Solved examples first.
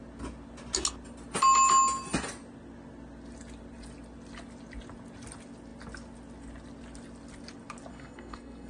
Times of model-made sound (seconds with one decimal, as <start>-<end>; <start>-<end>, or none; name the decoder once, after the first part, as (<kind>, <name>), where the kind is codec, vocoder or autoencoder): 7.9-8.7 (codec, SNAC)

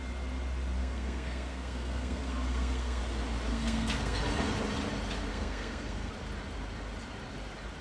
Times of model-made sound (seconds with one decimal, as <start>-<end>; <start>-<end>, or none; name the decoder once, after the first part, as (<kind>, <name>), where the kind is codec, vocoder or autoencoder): 0.8-3.0 (codec, SNAC); 3.5-4.2; 5.3-6.1

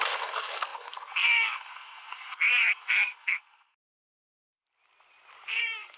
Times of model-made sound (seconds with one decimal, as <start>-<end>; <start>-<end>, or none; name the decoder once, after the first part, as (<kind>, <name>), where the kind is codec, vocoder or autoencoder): 0.0-4.2 (codec, SNAC); 5.6-6.0